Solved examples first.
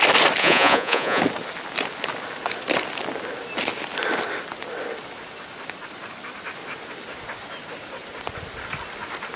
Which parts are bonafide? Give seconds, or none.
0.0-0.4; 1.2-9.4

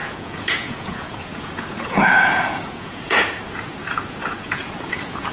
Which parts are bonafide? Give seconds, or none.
none